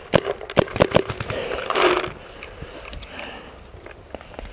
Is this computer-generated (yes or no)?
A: no